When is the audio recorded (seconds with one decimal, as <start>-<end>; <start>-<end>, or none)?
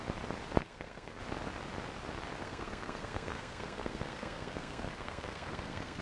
0.0-0.6; 1.2-2.4